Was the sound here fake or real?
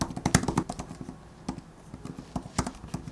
real